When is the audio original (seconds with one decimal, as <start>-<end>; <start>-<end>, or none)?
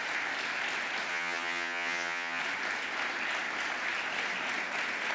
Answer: 0.0-1.1; 2.4-5.1